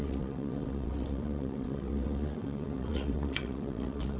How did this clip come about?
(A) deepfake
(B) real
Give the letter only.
A